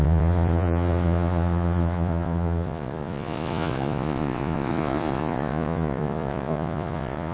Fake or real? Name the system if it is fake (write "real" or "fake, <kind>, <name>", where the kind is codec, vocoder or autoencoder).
fake, vocoder, Vocos